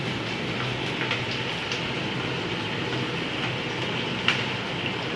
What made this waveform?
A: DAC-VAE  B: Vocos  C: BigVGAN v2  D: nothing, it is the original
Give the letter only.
D